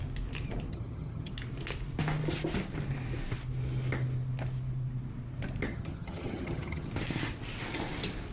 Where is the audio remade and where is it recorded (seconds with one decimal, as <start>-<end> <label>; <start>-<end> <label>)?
0.0-0.7 recorded; 0.7-1.3 remade; 1.3-5.7 recorded; 5.7-6.9 remade; 6.9-8.3 recorded